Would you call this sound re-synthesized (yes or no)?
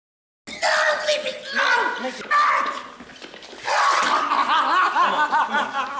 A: no